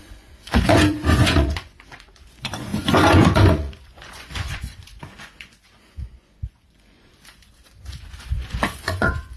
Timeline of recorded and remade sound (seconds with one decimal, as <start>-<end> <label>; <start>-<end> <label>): 0.0-9.4 remade